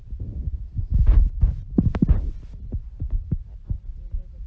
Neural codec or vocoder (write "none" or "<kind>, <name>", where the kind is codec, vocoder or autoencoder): none